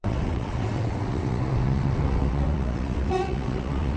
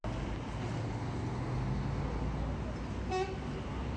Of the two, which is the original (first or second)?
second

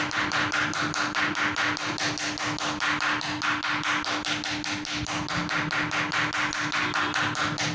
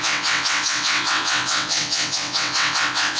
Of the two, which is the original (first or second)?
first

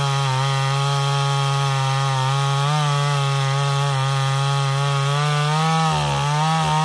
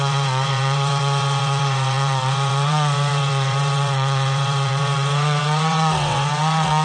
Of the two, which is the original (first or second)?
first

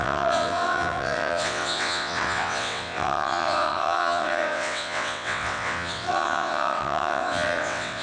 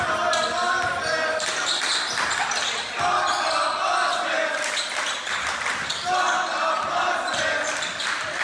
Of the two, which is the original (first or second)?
second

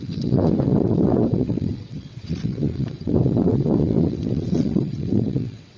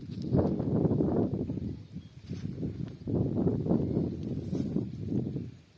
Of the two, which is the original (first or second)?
second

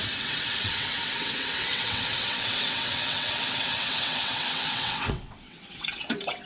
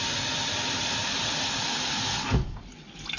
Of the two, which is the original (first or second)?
second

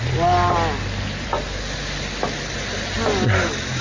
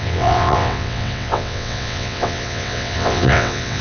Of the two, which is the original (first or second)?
first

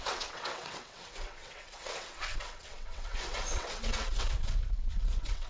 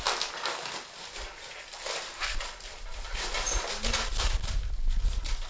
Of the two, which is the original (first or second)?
second